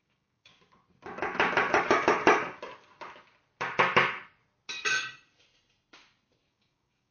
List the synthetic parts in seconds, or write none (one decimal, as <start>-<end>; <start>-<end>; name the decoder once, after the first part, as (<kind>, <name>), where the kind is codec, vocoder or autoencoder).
0.0-0.5 (codec, DAC); 1.8-2.2; 6.5-7.1